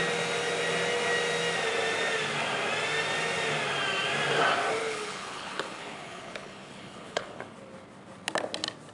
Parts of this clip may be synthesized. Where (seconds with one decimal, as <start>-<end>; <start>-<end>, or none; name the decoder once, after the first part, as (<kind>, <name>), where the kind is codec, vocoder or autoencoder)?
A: 4.8-7.4 (codec, HILCodec)